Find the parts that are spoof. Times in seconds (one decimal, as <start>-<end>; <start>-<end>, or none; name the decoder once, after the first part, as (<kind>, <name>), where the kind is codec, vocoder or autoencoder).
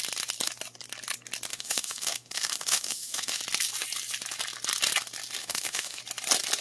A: 1.5-3.4 (autoencoder, DAC-VAE); 5.4-6.0